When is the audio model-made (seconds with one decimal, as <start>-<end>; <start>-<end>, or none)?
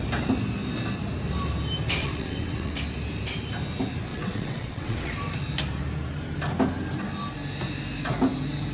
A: 2.0-2.8; 4.1-5.1